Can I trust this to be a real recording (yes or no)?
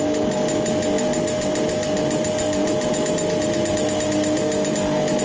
yes